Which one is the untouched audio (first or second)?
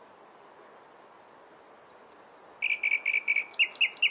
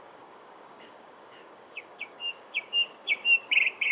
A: first